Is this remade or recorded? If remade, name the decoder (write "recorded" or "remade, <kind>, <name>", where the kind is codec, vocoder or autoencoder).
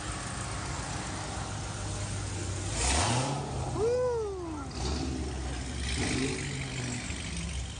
recorded